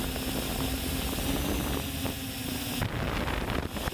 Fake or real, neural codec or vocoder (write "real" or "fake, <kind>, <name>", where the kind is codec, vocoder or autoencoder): real